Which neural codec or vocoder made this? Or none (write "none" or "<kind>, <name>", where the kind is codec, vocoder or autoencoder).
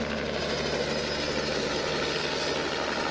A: none